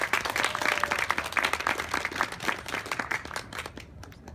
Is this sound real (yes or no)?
yes